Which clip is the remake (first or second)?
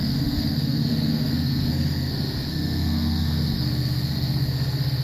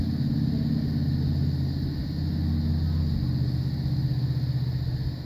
first